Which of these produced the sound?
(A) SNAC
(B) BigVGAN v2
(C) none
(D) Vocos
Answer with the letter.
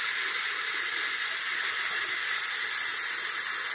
C